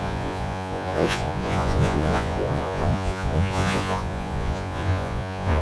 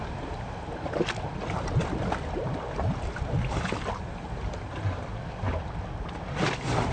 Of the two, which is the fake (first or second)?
first